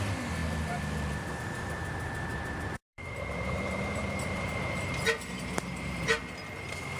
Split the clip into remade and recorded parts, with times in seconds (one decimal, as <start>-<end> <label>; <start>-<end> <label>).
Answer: 0.0-2.3 recorded; 2.3-6.2 remade; 6.2-7.0 recorded